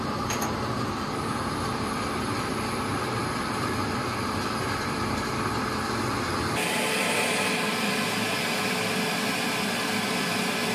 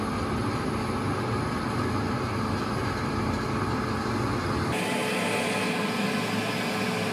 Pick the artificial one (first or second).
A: first